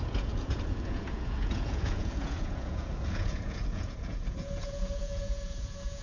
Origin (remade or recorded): remade